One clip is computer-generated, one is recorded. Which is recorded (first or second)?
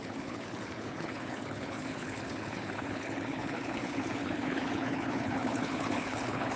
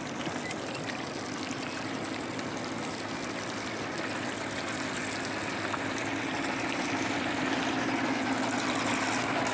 second